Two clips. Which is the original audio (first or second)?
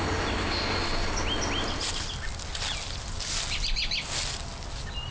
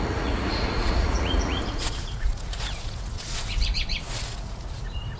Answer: first